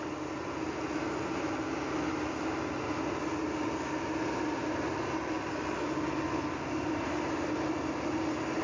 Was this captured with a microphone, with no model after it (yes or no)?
yes